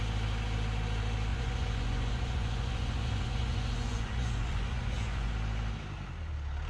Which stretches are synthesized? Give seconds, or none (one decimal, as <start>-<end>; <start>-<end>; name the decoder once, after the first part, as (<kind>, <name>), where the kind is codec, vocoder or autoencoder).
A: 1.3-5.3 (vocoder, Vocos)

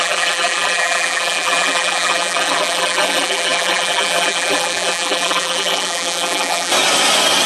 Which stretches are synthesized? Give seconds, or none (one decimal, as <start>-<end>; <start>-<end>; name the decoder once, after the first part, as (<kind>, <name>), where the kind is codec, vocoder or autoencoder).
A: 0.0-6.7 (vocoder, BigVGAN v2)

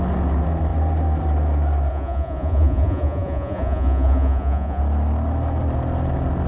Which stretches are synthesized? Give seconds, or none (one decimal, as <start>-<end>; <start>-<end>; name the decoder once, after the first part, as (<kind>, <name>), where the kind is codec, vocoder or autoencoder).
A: 1.9-4.8 (vocoder, Vocos)